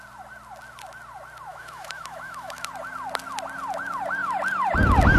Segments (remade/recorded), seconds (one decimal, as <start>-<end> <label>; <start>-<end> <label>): 0.0-1.5 recorded; 1.5-2.7 remade; 2.7-5.2 recorded